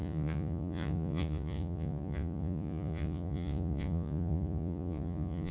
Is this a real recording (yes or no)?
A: no